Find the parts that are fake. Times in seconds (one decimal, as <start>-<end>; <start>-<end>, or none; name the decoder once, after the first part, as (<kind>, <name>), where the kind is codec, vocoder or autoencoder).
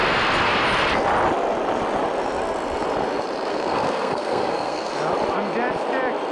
3.5-4.9 (codec, SNAC)